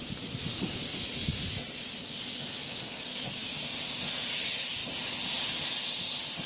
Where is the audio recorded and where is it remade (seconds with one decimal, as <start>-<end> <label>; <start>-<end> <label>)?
0.0-3.1 recorded; 3.1-3.6 remade; 3.6-6.5 recorded